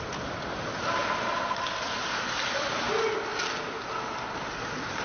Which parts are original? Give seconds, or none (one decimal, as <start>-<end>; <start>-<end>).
0.0-5.0